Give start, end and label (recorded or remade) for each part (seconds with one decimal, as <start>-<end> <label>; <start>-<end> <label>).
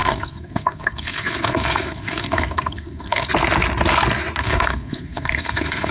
0.0-3.3 remade; 3.3-4.4 recorded; 4.4-5.9 remade